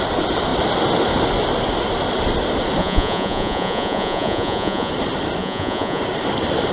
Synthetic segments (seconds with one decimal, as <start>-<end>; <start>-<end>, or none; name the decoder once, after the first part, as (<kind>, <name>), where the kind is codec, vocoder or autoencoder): 2.8-4.9 (vocoder, Vocos); 5.4-6.0